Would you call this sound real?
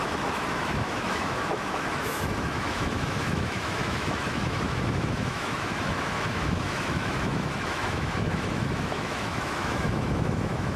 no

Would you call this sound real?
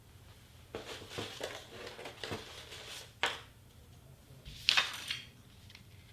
yes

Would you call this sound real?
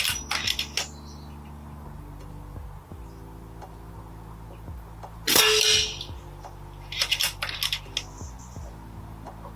yes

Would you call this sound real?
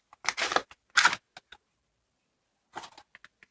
yes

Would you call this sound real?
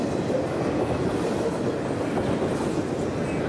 yes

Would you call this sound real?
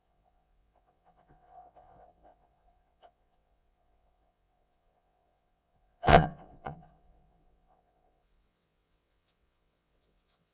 no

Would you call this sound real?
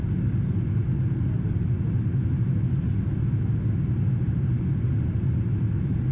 yes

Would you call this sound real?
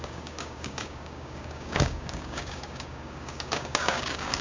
no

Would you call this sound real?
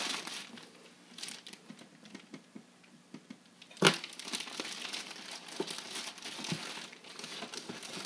yes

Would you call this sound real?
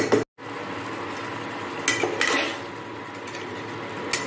yes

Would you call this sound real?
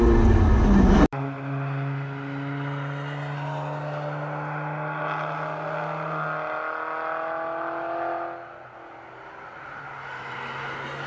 yes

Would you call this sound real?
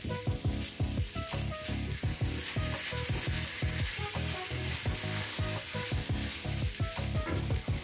yes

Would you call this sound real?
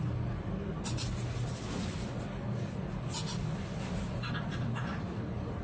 yes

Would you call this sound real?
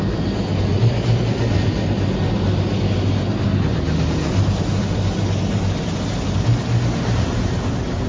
yes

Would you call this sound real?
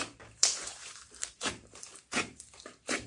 no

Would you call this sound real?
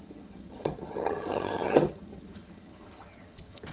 no